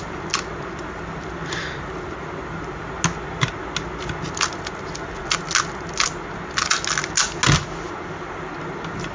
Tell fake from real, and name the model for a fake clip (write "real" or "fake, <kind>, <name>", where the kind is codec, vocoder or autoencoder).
real